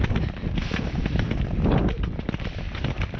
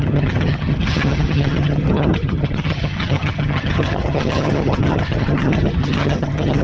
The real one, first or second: first